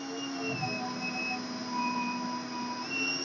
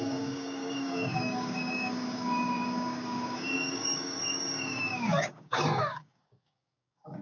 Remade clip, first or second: second